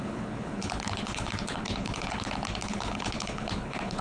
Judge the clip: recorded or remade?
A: remade